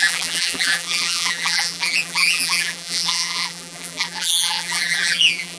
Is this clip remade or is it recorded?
remade